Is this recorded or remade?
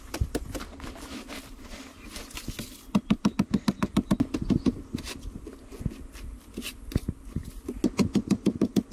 recorded